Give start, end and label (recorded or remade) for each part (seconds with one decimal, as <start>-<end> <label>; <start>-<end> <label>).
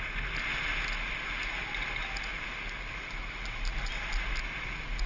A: 0.0-5.1 recorded